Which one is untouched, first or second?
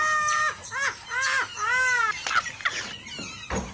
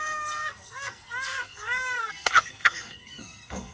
first